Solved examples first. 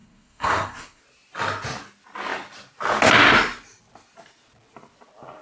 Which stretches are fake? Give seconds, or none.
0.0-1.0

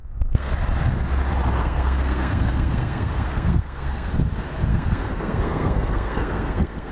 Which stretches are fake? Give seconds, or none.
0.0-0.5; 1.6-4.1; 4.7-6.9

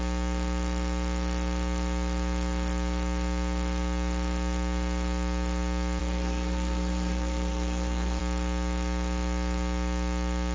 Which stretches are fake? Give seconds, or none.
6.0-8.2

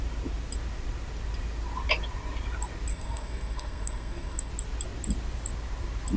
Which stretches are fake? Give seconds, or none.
2.9-4.5

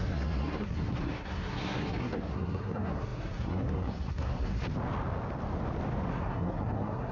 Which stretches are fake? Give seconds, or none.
0.0-4.6; 6.1-7.1